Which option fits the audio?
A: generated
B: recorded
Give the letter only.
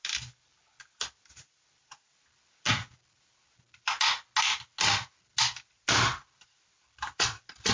B